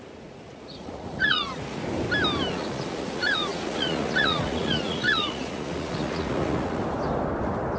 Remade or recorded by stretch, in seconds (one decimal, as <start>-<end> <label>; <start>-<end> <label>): 0.0-1.8 remade; 1.8-2.5 recorded; 2.5-6.8 remade; 6.8-7.8 recorded